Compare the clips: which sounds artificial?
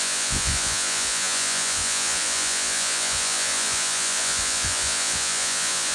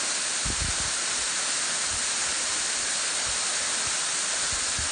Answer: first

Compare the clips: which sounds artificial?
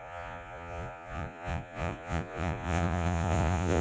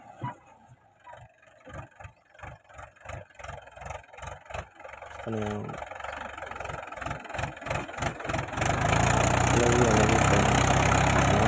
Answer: first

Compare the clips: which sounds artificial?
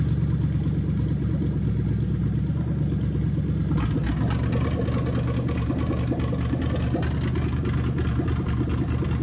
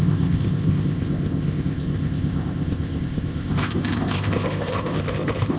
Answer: second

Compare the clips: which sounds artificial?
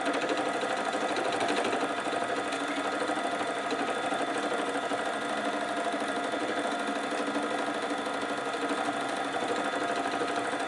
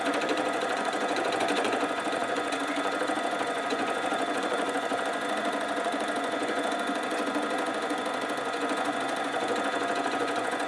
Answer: second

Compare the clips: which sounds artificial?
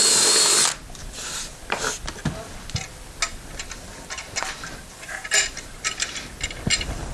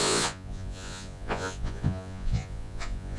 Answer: second